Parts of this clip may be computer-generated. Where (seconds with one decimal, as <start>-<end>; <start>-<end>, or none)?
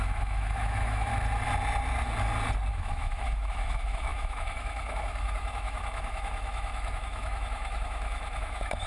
0.0-1.1; 2.7-8.9